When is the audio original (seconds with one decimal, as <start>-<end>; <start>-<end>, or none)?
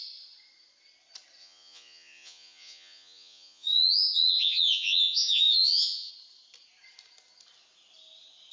0.0-1.4; 6.1-8.5